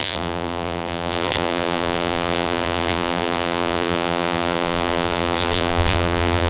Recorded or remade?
remade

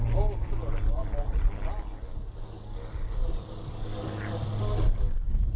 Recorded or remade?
recorded